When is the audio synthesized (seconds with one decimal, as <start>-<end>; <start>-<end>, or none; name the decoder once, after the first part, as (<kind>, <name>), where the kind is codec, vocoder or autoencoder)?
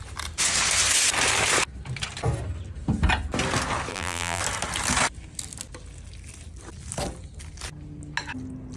3.9-4.4 (vocoder, BigVGAN v2)